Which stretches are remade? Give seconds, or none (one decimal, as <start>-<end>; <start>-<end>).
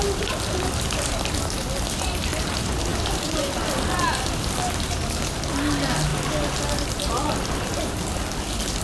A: none